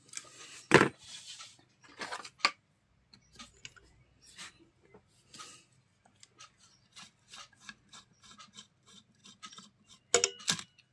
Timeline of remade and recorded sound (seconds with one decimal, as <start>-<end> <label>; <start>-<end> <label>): 0.0-10.9 recorded